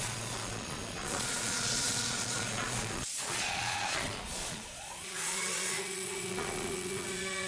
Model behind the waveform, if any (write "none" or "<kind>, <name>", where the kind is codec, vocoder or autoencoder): vocoder, Vocos